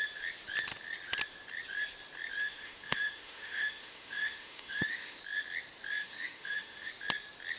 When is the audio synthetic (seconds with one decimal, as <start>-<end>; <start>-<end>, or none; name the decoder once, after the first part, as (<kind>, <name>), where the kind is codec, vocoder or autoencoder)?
2.4-5.2 (autoencoder, DAC-VAE); 6.0-6.9